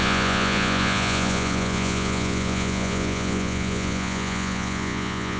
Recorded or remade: remade